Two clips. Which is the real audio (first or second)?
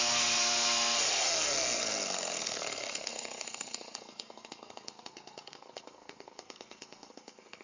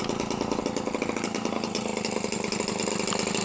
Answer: second